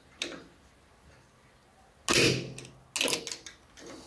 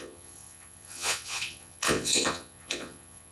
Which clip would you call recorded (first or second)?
first